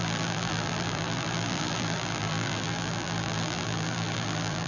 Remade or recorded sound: remade